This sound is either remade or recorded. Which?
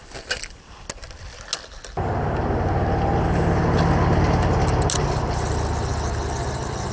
recorded